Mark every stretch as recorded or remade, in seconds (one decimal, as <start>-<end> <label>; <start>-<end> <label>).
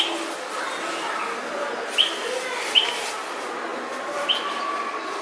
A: 0.0-5.2 recorded